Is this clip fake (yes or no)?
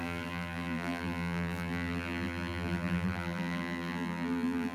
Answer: yes